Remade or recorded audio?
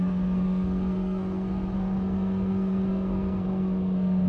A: remade